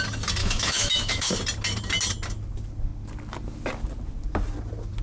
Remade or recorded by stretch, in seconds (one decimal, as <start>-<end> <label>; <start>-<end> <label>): 0.0-0.4 recorded; 0.4-1.3 remade; 1.3-5.0 recorded